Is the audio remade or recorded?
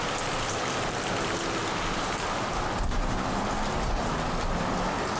recorded